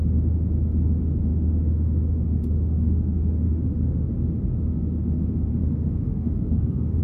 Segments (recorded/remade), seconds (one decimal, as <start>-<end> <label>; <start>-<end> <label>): 0.0-1.3 recorded; 1.3-4.1 remade; 4.1-5.5 recorded; 5.5-7.0 remade